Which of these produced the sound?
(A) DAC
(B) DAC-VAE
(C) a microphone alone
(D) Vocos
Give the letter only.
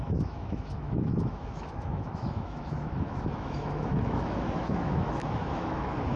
B